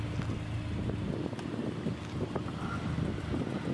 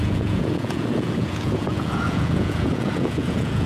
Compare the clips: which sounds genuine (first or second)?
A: first